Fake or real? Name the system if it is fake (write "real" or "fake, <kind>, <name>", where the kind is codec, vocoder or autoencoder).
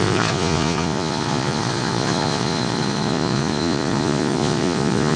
fake, vocoder, Vocos